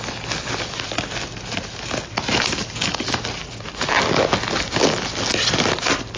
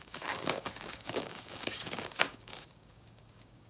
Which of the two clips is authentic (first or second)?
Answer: first